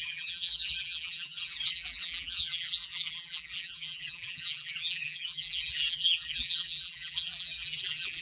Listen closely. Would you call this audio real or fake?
fake